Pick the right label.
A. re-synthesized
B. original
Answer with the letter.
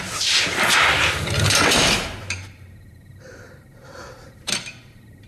A